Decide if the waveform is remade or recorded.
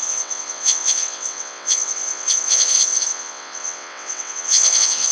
remade